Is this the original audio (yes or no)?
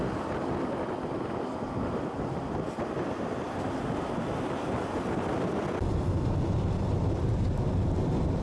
yes